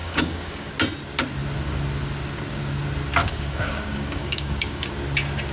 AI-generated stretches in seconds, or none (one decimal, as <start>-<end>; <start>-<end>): 0.0-0.7; 3.2-4.9